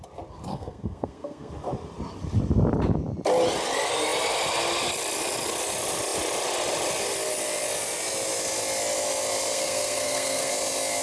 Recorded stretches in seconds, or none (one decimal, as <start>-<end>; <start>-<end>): 0.0-0.5; 1.5-9.5; 10.5-11.0